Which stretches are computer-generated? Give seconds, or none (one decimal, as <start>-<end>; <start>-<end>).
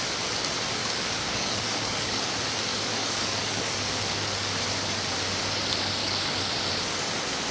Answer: 0.8-2.3; 2.7-4.5; 6.0-6.5